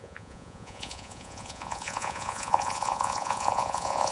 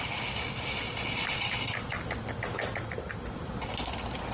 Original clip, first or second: second